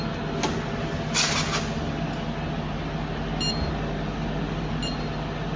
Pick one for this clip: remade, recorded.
recorded